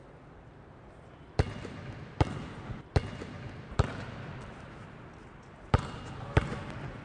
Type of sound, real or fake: fake